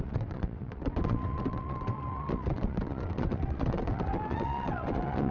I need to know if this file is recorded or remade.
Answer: remade